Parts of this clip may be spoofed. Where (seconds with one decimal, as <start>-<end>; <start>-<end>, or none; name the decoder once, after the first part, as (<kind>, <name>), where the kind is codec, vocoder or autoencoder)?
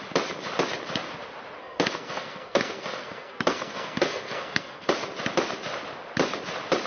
1.6-4.9 (codec, SNAC)